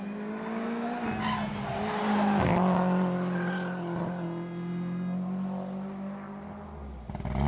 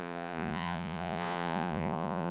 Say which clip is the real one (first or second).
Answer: first